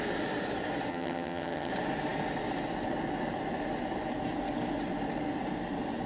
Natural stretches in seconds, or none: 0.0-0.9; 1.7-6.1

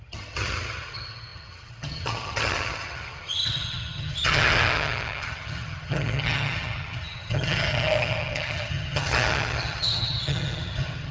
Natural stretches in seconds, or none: none

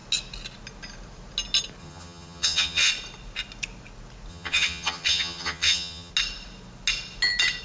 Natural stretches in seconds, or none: 0.0-1.8; 2.9-4.3; 6.1-7.6

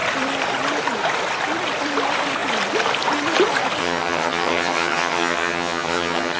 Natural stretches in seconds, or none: 0.0-3.8

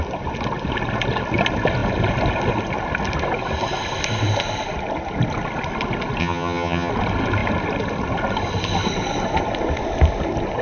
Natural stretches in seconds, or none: 0.0-6.2; 6.9-10.6

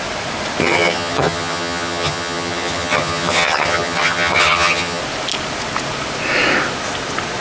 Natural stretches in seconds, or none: 0.0-0.6; 5.0-7.4